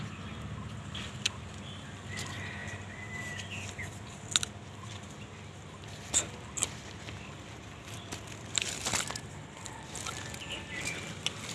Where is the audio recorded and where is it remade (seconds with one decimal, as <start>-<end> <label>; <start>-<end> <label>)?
0.0-11.5 recorded